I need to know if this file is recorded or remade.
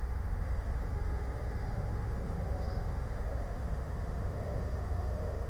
remade